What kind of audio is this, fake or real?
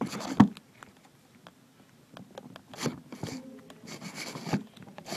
real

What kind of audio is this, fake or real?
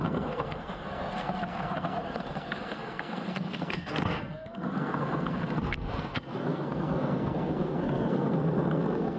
fake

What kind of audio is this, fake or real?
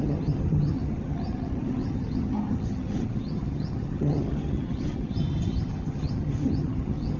fake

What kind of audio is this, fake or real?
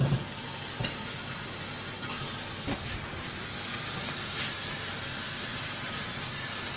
real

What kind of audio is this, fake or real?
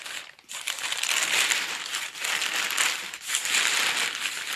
fake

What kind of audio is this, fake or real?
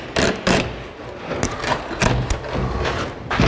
real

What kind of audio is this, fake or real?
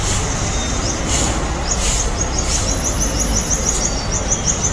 real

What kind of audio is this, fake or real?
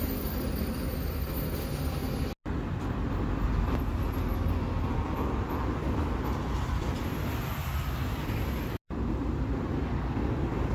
real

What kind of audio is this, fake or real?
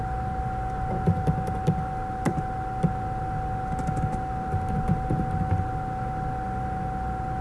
real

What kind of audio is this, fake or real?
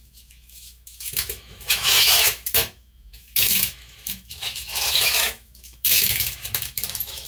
fake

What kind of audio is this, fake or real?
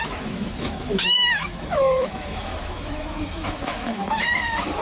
fake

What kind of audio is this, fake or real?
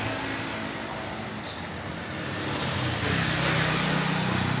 real